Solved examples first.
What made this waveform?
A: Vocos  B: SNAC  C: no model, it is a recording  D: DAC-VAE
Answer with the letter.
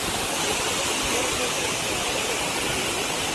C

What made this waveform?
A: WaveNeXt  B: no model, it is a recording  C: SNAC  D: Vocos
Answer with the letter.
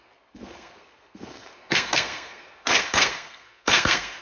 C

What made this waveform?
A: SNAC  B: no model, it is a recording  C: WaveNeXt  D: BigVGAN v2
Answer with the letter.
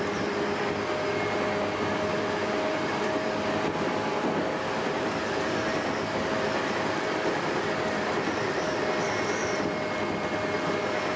B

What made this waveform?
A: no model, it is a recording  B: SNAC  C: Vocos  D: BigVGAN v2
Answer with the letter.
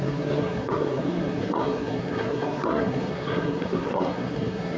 B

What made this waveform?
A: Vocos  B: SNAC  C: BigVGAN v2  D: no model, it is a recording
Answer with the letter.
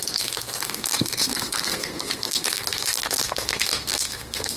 B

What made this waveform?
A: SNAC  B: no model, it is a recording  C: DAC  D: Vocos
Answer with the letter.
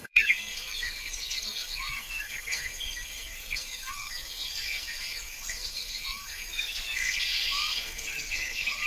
A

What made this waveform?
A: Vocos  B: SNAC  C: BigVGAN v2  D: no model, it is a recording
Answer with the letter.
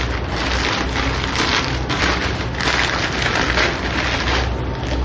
D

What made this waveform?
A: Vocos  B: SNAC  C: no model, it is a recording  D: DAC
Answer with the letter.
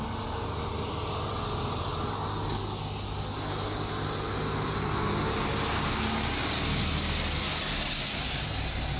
C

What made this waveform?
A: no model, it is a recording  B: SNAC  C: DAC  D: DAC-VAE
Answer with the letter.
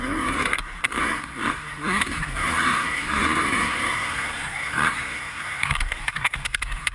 B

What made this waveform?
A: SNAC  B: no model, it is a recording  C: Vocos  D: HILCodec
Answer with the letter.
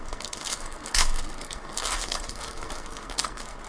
A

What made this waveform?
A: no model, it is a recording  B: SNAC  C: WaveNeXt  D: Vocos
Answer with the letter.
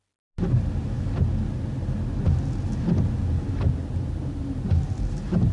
A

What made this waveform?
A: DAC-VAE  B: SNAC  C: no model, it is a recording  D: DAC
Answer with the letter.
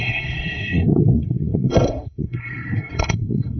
B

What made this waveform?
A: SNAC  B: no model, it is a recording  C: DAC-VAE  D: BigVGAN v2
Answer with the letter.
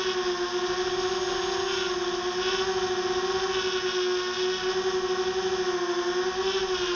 B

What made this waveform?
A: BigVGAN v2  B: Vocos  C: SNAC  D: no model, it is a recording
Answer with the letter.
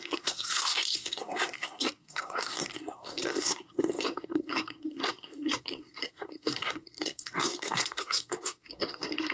C